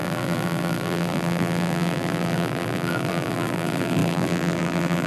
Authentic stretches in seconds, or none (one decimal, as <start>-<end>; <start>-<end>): none